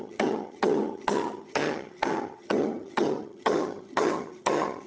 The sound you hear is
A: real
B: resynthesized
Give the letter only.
B